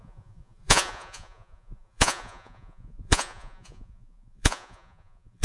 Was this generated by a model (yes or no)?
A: yes